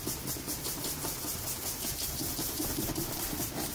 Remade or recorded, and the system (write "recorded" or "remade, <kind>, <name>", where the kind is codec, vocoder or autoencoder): remade, vocoder, BigVGAN v2